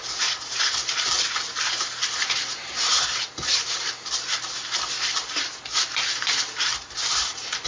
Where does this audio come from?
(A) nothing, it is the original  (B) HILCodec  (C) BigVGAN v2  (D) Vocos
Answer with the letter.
C